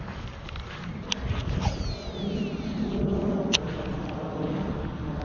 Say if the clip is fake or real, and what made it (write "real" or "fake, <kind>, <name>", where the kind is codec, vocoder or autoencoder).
real